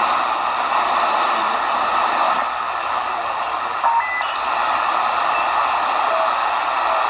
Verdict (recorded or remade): recorded